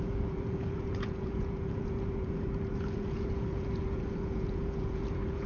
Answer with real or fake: fake